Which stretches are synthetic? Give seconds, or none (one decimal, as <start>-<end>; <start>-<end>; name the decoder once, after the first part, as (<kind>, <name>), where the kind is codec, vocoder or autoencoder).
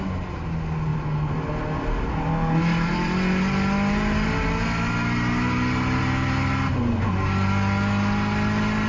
none